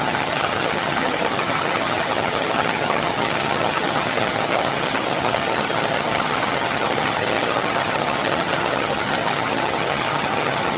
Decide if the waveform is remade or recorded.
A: remade